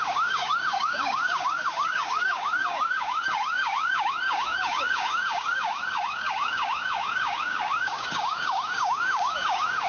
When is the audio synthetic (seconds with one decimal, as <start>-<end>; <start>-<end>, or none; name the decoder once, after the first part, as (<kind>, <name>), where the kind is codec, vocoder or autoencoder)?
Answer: 0.0-9.9 (codec, DAC)